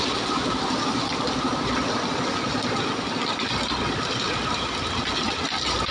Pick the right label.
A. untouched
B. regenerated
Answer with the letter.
A